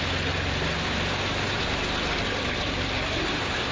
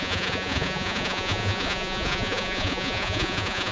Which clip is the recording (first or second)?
first